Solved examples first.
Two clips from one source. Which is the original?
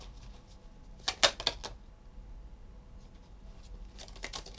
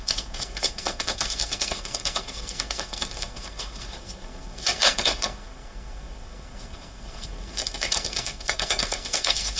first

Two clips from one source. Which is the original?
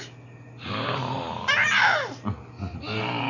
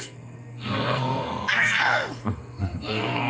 first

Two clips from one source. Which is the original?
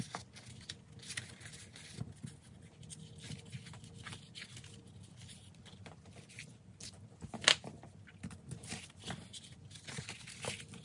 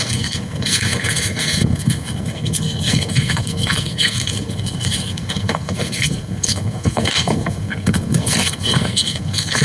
first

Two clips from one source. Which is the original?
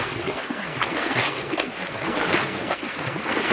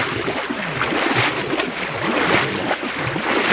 second